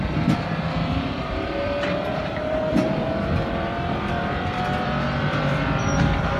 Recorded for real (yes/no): no